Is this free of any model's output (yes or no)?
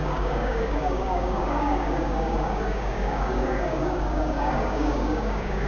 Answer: no